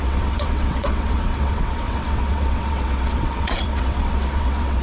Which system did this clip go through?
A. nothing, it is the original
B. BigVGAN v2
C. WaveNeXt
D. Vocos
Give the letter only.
C